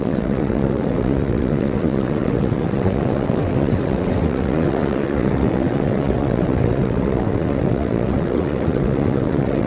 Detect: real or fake fake